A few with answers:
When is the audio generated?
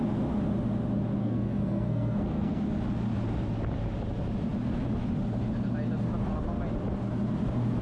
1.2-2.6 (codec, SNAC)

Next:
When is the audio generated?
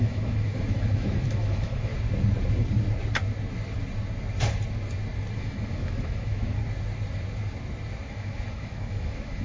0.0-1.9 (autoencoder, DAC-VAE); 5.4-6.6; 8.1-9.4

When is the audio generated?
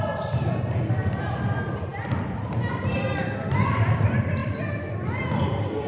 0.0-5.9 (vocoder, BigVGAN v2)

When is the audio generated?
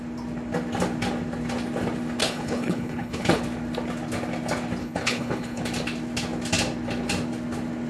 2.2-3.4 (codec, HILCodec); 4.8-5.6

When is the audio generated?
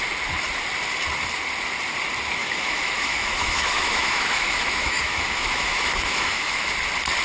2.4-6.7 (autoencoder, DAC-VAE)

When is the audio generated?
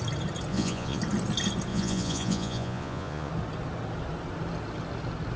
0.5-1.0 (vocoder, Vocos); 1.7-3.3